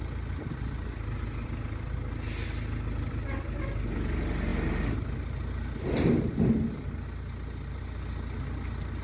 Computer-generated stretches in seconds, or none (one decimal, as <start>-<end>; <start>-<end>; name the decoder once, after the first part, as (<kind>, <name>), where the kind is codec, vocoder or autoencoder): none